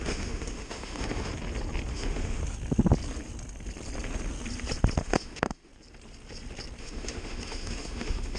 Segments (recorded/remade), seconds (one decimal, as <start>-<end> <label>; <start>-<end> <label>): 0.0-1.3 remade; 1.3-1.9 recorded; 1.9-2.4 remade; 2.4-5.0 recorded; 5.0-5.7 remade; 5.7-6.8 recorded; 6.8-8.4 remade